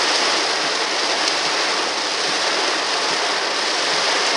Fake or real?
real